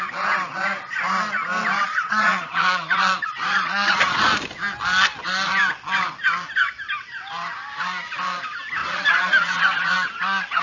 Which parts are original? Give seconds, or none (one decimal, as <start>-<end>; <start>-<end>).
0.0-1.8; 4.2-8.8